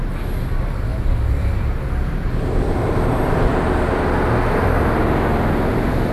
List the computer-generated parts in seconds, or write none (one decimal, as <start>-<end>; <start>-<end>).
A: none